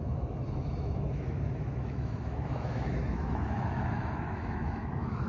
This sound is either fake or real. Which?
fake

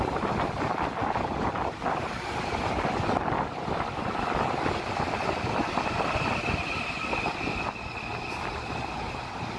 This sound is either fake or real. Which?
real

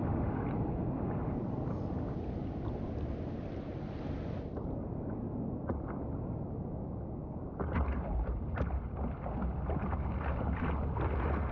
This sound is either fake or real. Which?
real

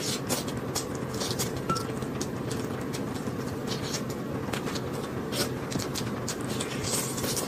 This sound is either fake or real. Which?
real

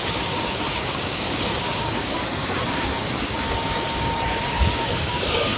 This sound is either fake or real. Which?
fake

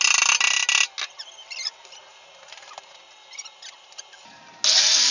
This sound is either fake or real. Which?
real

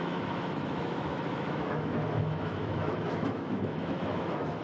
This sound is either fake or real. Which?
fake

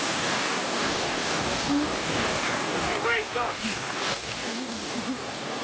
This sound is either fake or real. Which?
fake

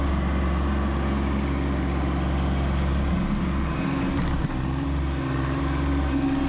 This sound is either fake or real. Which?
real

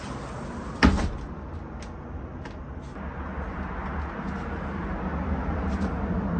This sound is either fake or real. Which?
real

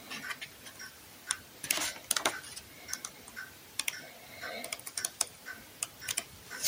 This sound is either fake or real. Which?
real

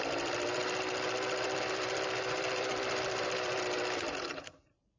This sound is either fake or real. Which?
fake